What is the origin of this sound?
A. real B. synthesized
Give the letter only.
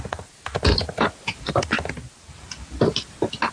A